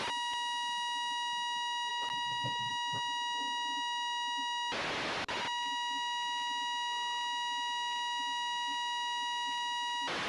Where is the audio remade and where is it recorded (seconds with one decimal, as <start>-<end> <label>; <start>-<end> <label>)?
0.0-1.9 recorded; 1.9-2.7 remade; 2.7-10.3 recorded